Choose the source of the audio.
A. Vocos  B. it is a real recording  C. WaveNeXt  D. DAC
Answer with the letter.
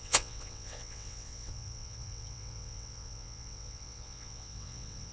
C